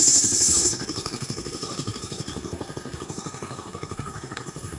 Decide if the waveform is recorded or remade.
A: remade